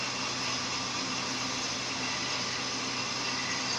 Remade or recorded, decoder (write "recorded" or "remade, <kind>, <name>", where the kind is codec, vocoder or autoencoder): recorded